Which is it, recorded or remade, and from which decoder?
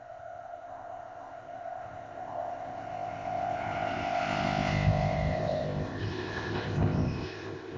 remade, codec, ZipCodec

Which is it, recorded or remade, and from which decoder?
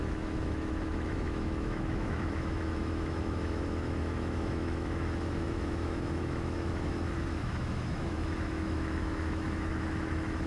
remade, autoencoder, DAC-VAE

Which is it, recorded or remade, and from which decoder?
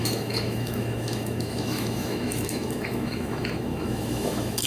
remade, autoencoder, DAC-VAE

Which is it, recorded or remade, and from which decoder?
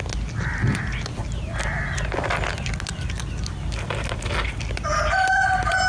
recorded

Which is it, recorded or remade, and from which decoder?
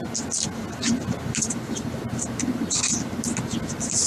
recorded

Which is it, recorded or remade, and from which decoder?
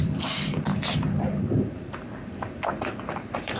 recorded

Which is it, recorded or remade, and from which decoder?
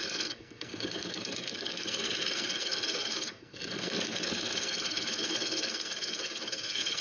remade, codec, SNAC